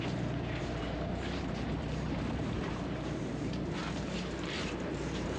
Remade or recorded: remade